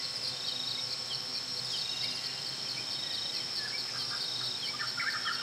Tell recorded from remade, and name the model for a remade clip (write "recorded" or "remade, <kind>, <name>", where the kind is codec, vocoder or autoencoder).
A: recorded